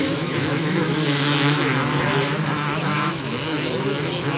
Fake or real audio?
fake